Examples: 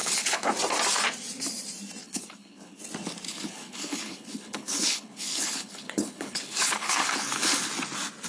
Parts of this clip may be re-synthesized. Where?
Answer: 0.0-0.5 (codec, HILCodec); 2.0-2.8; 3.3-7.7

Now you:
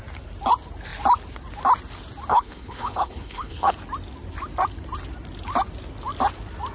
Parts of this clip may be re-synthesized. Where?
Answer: 2.3-3.7 (codec, HILCodec)